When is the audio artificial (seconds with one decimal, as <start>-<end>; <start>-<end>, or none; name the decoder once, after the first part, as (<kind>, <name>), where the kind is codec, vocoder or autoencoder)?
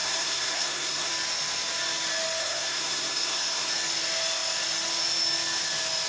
0.0-1.1 (codec, SNAC); 2.4-3.7